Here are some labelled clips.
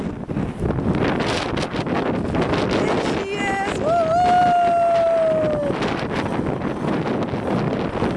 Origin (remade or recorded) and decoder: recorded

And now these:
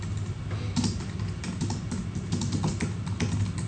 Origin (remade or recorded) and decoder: recorded